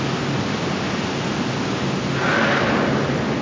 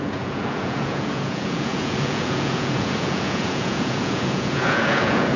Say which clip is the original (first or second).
first